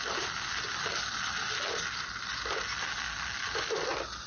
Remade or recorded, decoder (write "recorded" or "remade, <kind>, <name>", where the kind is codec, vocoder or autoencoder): recorded